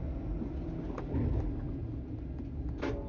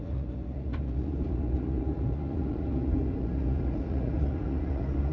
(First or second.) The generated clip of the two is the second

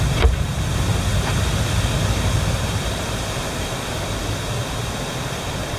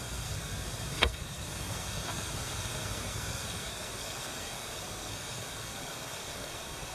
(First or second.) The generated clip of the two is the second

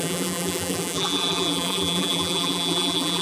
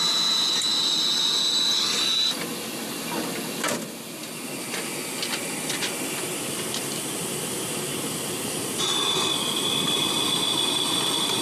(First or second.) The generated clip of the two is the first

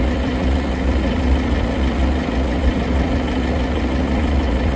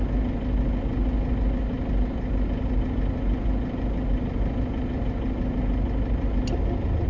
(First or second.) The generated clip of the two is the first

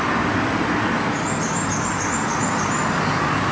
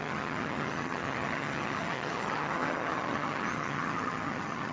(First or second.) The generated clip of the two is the second